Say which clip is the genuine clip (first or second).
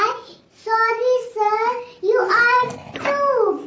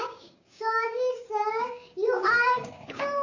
first